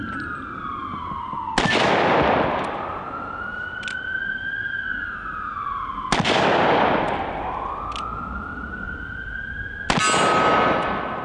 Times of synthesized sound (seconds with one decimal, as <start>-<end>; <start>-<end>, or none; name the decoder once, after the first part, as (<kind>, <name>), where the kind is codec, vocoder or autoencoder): none